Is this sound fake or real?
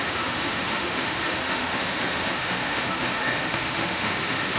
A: fake